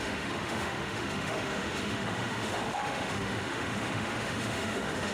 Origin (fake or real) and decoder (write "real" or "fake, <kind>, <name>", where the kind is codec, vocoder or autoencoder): fake, autoencoder, DAC-VAE